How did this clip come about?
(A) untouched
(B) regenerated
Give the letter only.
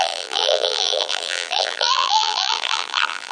B